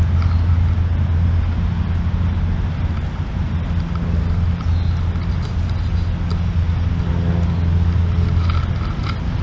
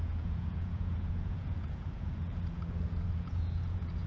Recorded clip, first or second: first